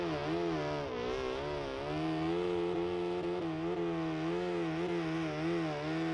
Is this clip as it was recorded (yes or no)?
yes